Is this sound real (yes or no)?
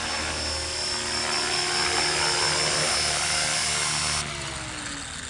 yes